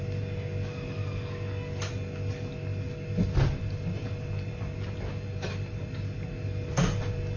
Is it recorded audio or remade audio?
recorded